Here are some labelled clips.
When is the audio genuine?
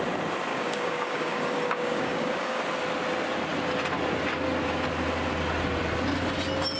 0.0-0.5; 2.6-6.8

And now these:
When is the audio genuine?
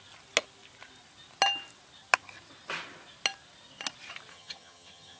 0.0-4.3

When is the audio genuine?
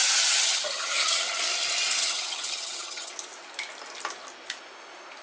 1.4-2.0; 3.1-5.2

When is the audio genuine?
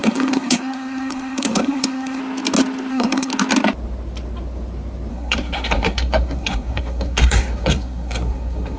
2.2-2.9; 3.3-5.1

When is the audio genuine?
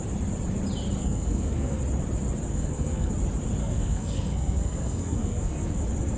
0.0-1.0; 1.8-2.5; 3.1-3.6; 5.8-6.2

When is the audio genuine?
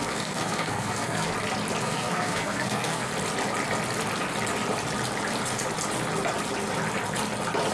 1.3-1.8; 3.1-7.7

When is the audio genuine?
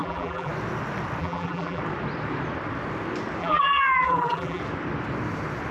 0.5-1.2; 1.8-3.4; 4.6-5.7